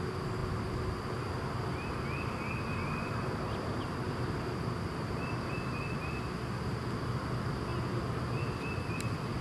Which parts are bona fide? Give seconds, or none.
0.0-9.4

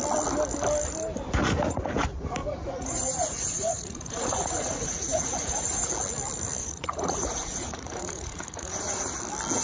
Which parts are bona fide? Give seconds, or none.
0.0-1.4; 1.9-2.4; 5.9-6.6; 9.2-9.6

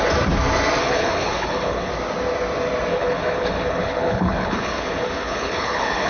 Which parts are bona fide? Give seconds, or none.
0.0-0.8; 1.9-2.9